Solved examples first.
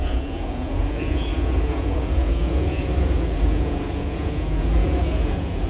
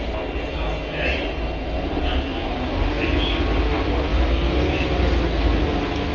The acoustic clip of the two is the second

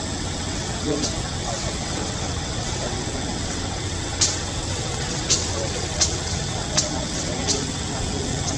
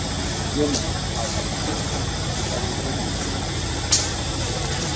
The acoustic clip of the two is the second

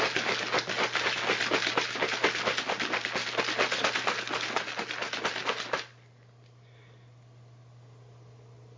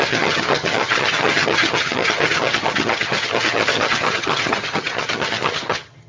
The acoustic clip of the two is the first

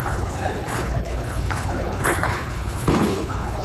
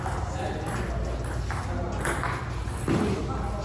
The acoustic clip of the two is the second